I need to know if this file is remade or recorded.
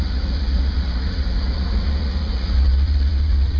remade